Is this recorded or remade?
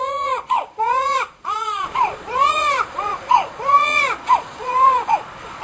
remade